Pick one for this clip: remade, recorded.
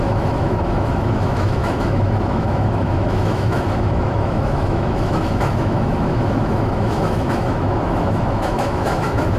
remade